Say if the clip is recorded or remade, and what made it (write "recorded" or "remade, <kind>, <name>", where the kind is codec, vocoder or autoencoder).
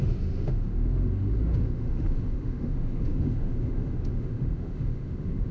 remade, autoencoder, DAC-VAE